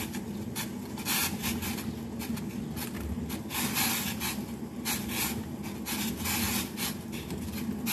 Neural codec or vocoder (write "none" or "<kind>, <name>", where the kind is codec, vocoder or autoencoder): none